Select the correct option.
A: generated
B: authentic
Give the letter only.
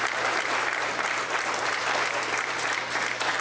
A